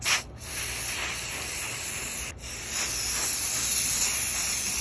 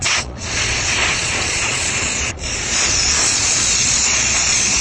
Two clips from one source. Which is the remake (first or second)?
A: second